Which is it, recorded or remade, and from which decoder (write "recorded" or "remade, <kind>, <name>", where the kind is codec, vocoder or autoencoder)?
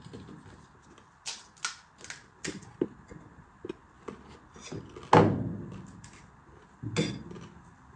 recorded